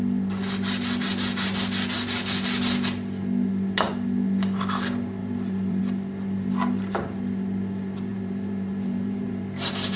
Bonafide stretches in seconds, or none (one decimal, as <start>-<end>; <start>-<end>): 0.0-5.2; 5.8-8.1; 9.3-10.0